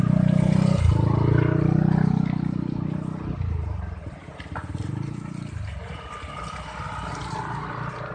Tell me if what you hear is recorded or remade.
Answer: recorded